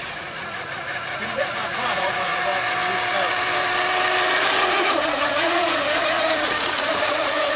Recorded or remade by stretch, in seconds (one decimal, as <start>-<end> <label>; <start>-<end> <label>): 0.0-2.5 remade; 2.5-4.5 recorded; 4.5-7.6 remade